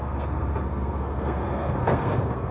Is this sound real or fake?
fake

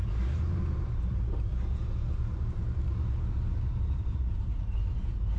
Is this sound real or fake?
fake